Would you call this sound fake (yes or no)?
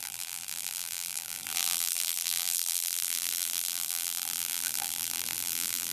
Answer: yes